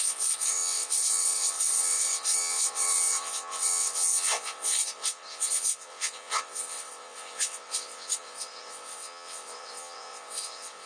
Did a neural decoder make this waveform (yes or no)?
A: yes